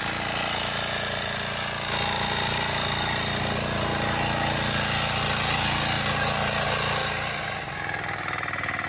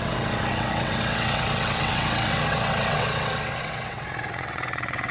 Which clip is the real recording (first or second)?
first